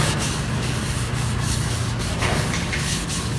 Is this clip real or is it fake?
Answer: fake